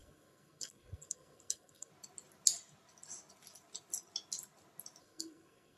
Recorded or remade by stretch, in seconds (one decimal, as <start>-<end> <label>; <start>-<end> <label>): 0.0-1.9 remade; 1.9-5.0 recorded; 5.0-5.8 remade